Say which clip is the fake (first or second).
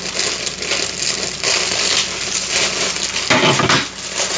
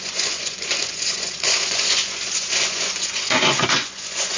second